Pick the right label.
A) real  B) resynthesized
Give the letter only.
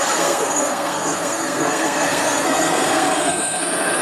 B